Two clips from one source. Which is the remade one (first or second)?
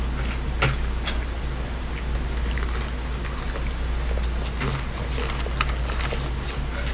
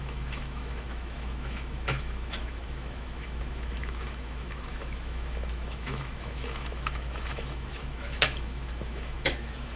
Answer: second